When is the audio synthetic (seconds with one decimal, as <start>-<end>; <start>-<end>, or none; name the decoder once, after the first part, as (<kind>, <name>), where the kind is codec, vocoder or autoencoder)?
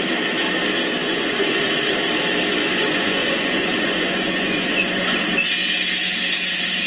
1.0-1.6 (vocoder, Vocos); 2.6-5.2